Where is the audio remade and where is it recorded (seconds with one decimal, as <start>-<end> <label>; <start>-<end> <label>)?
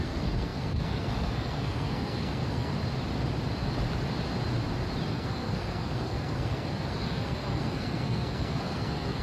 0.0-2.7 remade; 2.7-5.1 recorded; 5.1-9.2 remade